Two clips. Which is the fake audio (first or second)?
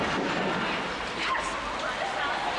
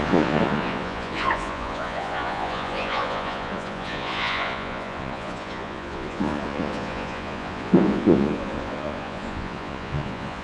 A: second